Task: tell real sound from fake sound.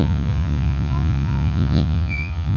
fake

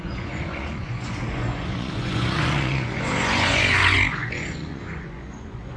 fake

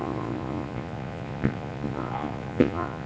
fake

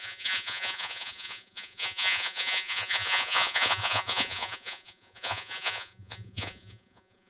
fake